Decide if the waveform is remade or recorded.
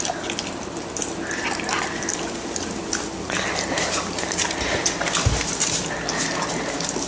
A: recorded